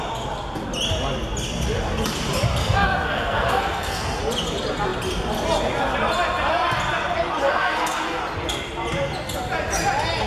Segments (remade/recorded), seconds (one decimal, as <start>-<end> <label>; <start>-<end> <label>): 0.0-2.6 recorded; 2.6-4.2 remade; 4.2-7.4 recorded; 7.4-8.2 remade; 8.2-10.3 recorded